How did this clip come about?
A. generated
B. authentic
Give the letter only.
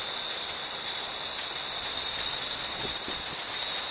B